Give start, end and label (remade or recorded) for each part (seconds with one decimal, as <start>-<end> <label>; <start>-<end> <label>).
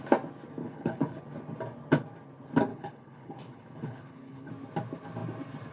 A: 0.0-0.6 recorded; 0.6-1.2 remade; 1.2-2.7 recorded; 2.7-4.5 remade; 4.5-5.7 recorded